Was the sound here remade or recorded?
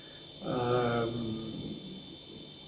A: recorded